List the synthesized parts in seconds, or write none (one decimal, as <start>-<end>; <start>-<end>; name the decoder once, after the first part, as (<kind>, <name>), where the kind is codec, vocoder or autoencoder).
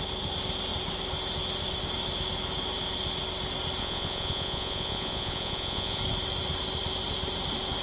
3.8-6.0 (vocoder, Vocos)